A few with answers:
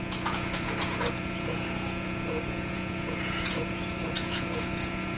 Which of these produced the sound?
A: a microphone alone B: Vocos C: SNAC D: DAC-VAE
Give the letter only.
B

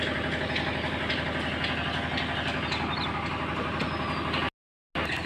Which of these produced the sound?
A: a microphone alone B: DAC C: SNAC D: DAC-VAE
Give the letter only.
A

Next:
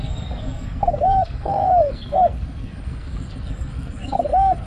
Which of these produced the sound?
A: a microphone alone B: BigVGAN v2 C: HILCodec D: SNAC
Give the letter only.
D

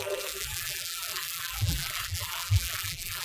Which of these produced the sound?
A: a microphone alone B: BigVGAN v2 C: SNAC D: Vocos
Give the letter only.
B